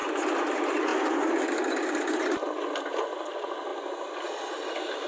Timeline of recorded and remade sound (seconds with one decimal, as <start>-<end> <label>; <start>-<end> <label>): 0.0-5.1 recorded